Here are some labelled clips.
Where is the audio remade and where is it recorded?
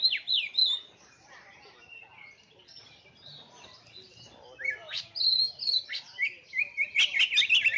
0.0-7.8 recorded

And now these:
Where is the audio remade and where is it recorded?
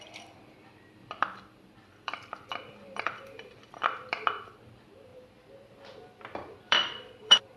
0.0-5.1 remade; 5.1-6.6 recorded; 6.6-7.6 remade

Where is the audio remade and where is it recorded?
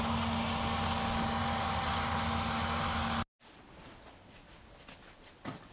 0.0-5.7 recorded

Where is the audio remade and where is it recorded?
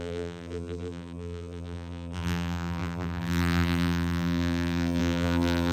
0.0-5.7 remade